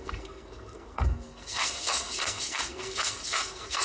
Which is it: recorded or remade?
remade